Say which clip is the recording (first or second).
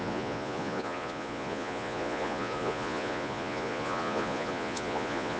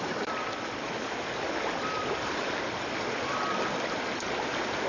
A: second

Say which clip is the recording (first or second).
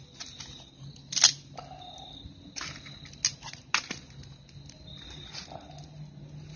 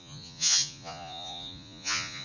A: first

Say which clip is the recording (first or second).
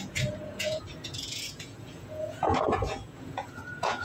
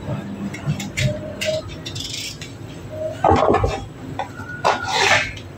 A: second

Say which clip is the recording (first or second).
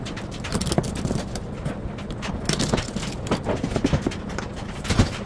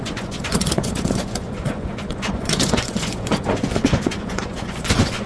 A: first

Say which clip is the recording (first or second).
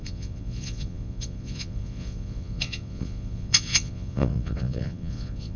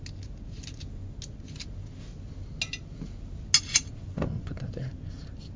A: second